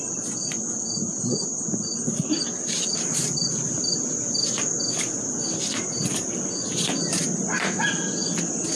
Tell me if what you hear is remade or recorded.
recorded